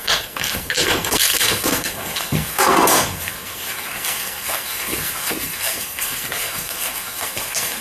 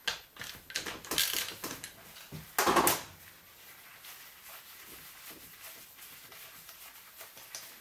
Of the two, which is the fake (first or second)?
first